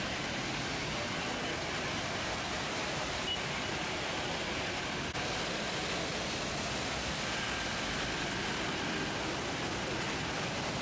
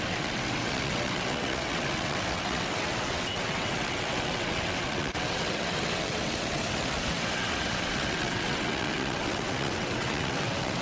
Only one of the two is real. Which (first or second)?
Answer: first